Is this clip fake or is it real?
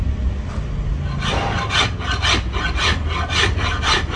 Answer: real